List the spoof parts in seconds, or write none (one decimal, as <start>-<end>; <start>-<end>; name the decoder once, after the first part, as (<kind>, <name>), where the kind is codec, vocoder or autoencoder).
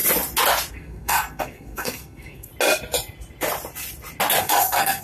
0.7-2.5 (codec, SNAC); 4.4-5.0